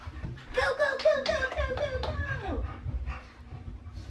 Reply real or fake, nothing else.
fake